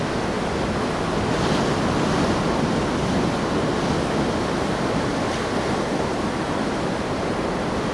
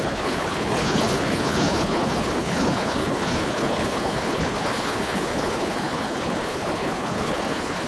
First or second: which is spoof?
second